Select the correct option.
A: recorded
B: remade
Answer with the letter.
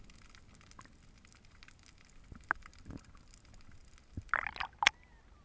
A